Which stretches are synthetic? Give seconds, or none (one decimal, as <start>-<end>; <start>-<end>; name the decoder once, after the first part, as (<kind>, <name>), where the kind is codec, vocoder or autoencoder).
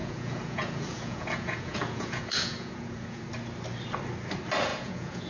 0.0-3.2 (vocoder, Vocos); 4.7-5.3